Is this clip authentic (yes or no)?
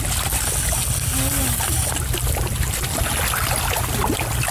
yes